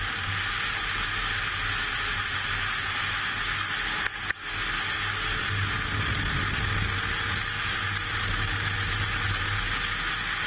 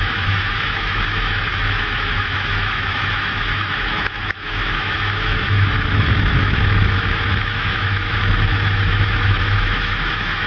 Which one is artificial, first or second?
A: second